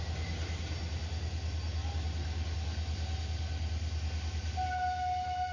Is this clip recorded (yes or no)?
yes